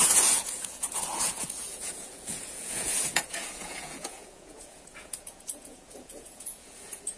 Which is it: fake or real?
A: fake